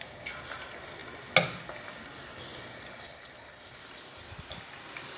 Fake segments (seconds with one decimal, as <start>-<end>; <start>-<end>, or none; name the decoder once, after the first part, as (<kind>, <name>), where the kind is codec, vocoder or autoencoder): 2.5-4.3 (vocoder, BigVGAN v2)